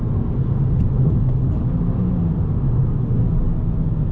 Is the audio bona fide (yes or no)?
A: yes